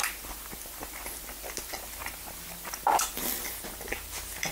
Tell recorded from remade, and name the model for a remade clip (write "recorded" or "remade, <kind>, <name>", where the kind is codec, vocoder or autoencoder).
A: recorded